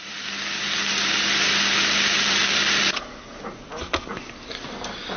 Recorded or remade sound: recorded